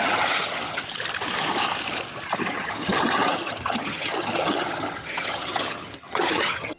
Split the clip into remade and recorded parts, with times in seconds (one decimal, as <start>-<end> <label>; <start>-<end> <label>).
0.0-0.8 remade; 0.8-2.5 recorded; 2.5-6.8 remade